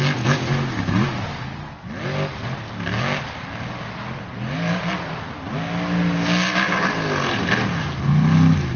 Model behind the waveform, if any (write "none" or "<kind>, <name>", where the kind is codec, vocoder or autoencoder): none